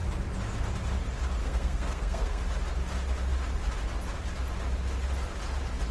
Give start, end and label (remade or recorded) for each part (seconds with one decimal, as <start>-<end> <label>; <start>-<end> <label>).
0.0-1.4 recorded; 1.4-2.4 remade; 2.4-5.9 recorded